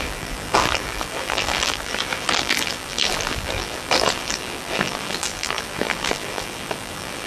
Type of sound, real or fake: fake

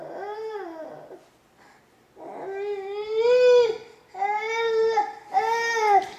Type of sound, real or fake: real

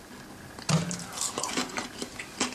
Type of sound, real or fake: real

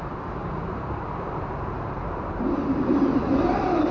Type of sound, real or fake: fake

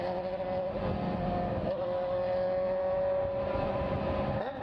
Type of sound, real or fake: real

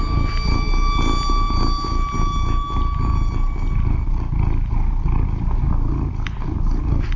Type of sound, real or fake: real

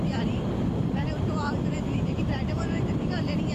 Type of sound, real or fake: fake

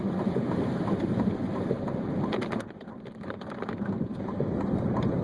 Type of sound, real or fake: fake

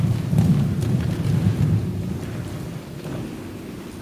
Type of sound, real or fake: real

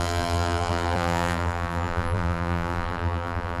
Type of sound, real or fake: fake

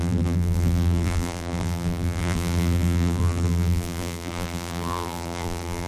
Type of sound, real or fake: fake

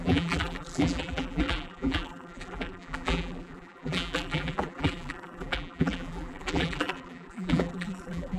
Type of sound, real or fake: fake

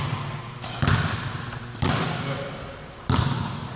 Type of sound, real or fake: fake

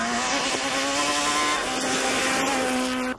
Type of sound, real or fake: real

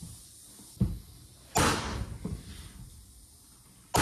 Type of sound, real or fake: real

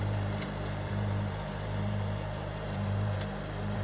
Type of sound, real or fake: fake